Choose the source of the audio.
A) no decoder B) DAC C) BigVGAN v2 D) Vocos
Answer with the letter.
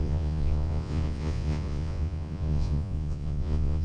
D